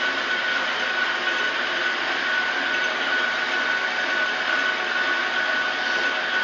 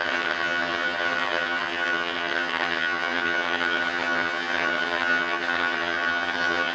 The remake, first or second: second